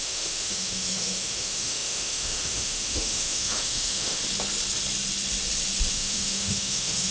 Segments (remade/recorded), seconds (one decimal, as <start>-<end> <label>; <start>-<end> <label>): 0.0-4.2 remade; 4.2-5.9 recorded; 5.9-7.1 remade